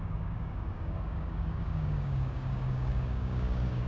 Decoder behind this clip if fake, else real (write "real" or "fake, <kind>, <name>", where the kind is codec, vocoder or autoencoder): fake, codec, DAC